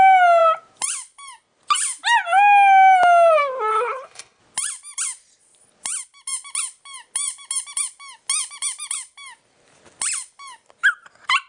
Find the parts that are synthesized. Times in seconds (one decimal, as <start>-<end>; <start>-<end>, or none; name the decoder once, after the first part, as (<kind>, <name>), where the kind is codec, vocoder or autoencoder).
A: 3.7-4.4 (codec, HILCodec)